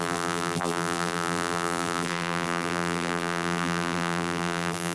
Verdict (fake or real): fake